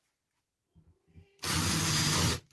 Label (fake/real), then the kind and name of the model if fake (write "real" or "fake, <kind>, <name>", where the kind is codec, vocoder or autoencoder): real